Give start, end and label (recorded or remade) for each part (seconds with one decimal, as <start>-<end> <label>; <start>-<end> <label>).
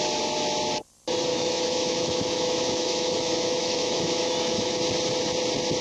0.0-1.3 recorded; 1.3-4.8 remade; 4.8-5.8 recorded